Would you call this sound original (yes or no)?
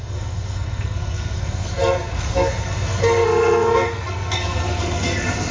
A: no